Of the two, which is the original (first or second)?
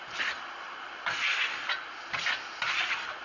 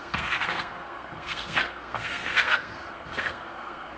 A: first